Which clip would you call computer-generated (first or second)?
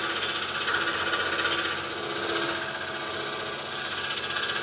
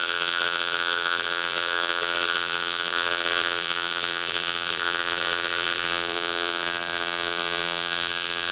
second